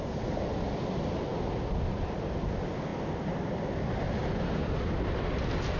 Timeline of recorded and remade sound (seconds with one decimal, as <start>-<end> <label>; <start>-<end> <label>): 0.0-5.8 recorded